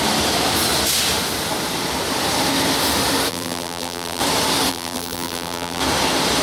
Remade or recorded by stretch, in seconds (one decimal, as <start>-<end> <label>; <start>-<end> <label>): 0.0-3.3 recorded; 3.3-4.2 remade; 4.2-4.7 recorded; 4.7-5.8 remade; 5.8-6.4 recorded